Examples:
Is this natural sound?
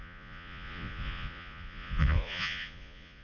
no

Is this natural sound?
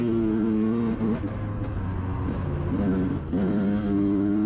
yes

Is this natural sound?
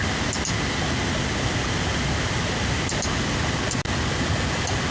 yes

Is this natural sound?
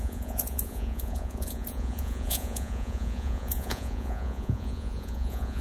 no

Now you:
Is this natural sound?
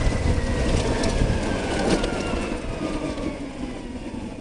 no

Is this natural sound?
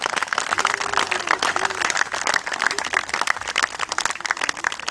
yes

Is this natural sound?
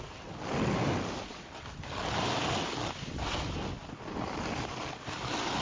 yes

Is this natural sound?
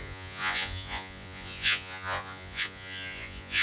no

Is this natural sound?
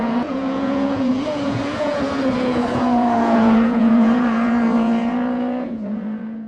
no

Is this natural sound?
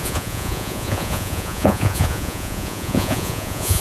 no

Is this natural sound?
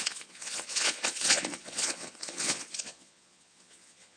no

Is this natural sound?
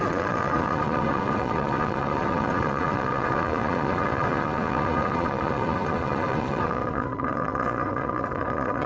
no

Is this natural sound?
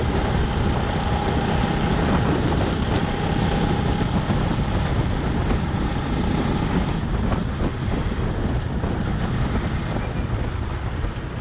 yes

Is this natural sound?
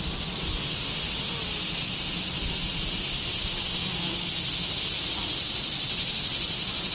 yes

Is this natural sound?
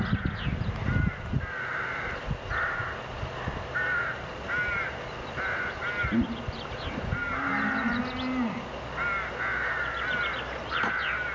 yes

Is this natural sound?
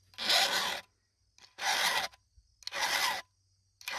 yes